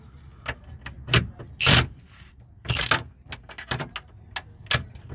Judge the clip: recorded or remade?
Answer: recorded